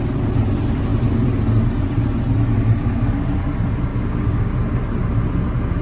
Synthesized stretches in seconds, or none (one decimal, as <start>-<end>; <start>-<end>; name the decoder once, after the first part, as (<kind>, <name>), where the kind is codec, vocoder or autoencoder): 2.8-3.4 (codec, DAC); 3.9-4.6

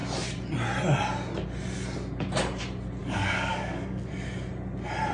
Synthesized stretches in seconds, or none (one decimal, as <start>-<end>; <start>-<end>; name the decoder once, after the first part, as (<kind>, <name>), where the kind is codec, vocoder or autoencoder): 3.0-4.1 (codec, DAC)

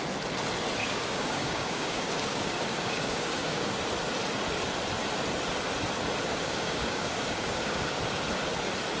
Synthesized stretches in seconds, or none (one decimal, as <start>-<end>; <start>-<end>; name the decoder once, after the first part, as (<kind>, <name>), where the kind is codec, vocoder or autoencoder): 0.8-3.7 (codec, DAC); 6.3-8.0

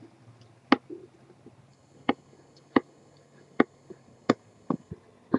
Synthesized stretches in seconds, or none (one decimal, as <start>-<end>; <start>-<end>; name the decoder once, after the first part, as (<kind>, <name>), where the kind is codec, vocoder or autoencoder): 1.7-4.9 (codec, DAC)

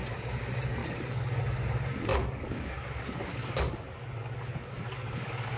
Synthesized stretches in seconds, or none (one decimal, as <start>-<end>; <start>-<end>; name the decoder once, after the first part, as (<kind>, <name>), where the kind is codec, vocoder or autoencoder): 0.8-1.4 (codec, DAC); 2.1-5.6

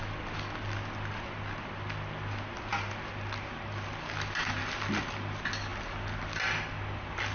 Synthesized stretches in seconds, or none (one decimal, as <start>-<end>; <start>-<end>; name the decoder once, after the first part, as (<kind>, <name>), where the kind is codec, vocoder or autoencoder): none

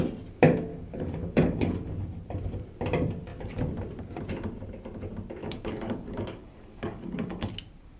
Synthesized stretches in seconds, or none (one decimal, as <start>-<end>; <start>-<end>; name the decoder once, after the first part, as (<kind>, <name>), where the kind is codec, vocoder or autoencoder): 0.7-2.0 (codec, DAC); 5.4-7.5